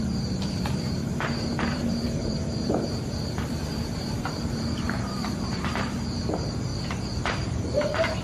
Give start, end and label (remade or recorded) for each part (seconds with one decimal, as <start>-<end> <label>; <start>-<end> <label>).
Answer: 0.0-6.7 remade; 6.7-7.2 recorded; 7.2-8.2 remade